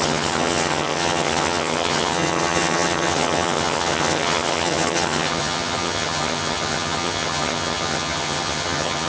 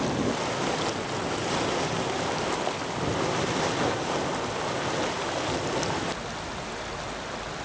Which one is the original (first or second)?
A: second